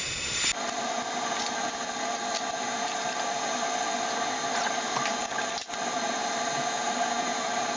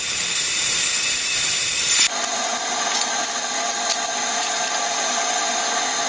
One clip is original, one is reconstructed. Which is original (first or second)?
first